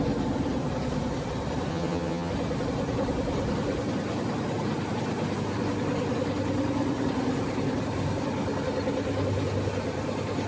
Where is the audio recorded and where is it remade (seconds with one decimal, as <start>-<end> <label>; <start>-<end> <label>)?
0.0-1.7 recorded; 1.7-2.3 remade; 2.3-10.5 recorded